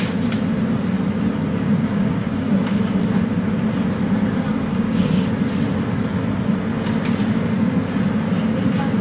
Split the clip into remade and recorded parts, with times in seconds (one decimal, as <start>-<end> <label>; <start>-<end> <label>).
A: 0.0-1.5 recorded; 1.5-2.5 remade; 2.5-4.7 recorded; 4.7-5.3 remade; 5.3-9.0 recorded